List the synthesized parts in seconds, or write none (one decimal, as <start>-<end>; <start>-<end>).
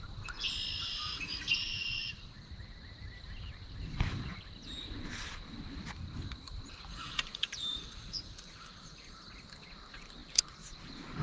0.8-2.5; 6.9-9.4